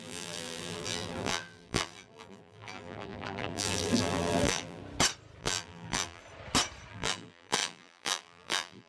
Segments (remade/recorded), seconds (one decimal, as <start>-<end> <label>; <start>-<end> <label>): 0.0-4.8 remade; 4.8-5.4 recorded; 5.4-6.2 remade; 6.2-6.9 recorded; 6.9-8.9 remade